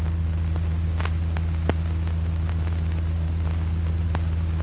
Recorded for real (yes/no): yes